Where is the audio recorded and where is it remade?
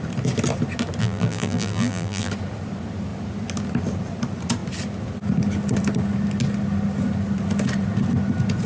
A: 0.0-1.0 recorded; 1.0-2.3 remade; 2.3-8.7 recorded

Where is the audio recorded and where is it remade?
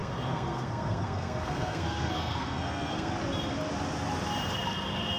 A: 0.0-3.1 remade; 3.1-5.2 recorded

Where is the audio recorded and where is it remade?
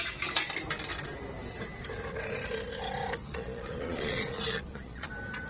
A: 0.0-3.2 recorded; 3.2-5.1 remade; 5.1-5.5 recorded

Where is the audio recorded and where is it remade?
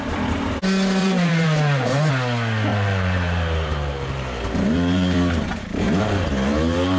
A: 0.0-1.0 recorded; 1.0-2.1 remade; 2.1-2.7 recorded; 2.7-7.0 remade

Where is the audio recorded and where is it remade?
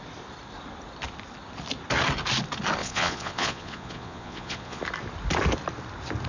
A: 0.0-2.8 recorded; 2.8-4.8 remade; 4.8-6.3 recorded